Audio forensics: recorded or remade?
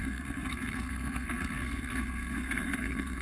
remade